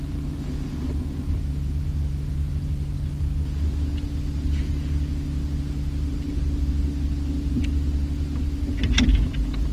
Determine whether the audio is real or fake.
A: real